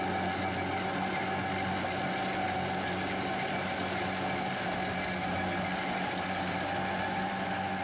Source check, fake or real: real